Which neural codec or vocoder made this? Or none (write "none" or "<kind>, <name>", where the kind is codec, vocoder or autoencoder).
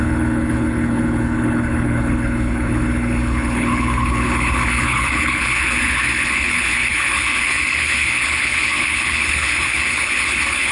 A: codec, HILCodec